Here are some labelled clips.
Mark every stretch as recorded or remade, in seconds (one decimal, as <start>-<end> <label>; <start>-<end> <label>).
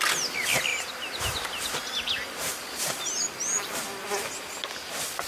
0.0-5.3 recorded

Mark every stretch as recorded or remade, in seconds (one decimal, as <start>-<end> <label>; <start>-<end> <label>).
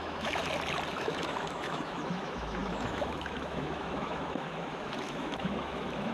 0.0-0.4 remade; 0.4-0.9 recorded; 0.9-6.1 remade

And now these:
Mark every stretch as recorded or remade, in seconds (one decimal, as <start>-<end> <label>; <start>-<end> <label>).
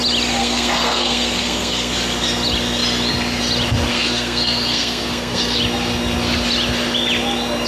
0.0-0.4 recorded; 0.4-1.9 remade; 1.9-3.9 recorded; 3.9-5.6 remade; 5.6-7.7 recorded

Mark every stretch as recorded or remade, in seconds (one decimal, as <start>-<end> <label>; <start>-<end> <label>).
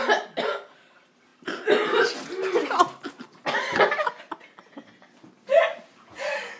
0.0-6.6 recorded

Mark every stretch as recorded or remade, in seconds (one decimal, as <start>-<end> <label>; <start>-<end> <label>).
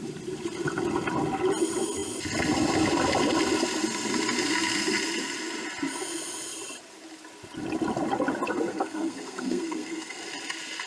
0.0-8.7 recorded; 8.7-10.2 remade; 10.2-10.9 recorded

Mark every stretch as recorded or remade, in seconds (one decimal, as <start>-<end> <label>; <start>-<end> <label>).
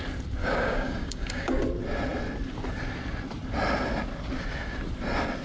0.0-0.4 recorded; 0.4-1.6 remade; 1.6-5.4 recorded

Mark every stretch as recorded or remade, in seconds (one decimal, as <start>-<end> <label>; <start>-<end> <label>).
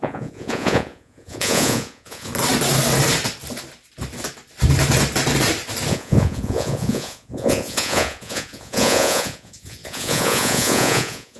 0.0-2.3 remade; 2.3-5.9 recorded; 5.9-11.4 remade